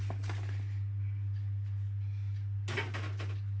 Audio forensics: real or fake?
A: real